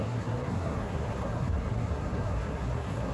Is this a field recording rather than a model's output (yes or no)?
no